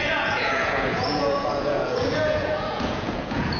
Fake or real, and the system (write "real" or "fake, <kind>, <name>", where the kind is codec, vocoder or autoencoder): fake, vocoder, Vocos